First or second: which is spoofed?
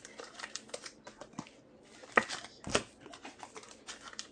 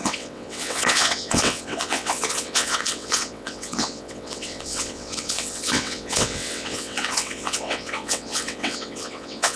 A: second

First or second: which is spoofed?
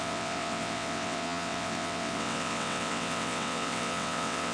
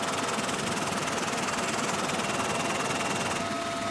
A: first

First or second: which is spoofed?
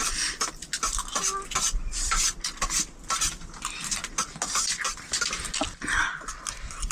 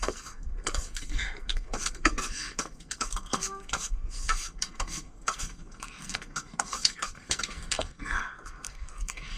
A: second